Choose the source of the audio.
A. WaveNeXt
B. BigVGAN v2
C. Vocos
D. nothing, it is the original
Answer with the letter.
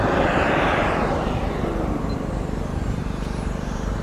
B